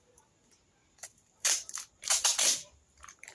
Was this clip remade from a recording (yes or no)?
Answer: yes